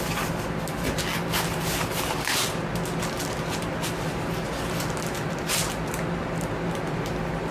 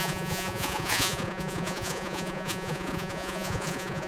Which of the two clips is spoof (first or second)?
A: second